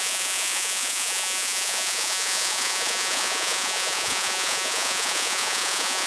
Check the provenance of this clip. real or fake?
fake